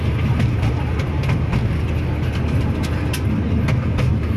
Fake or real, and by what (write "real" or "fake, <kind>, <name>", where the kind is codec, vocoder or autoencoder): real